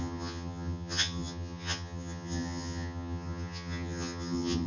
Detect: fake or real fake